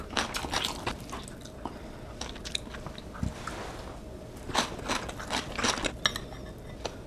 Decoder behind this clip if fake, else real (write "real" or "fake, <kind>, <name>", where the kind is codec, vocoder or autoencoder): real